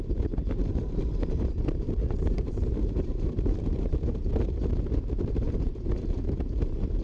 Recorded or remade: remade